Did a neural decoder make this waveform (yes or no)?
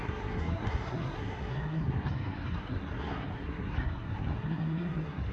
yes